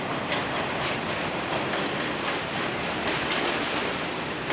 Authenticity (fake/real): fake